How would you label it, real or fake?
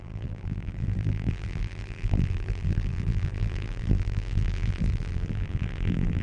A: fake